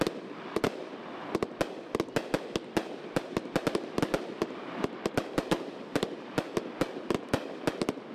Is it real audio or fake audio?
real